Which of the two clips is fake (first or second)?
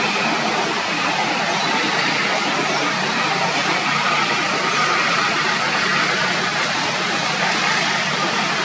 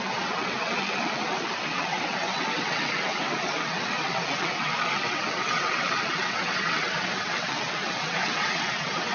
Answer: second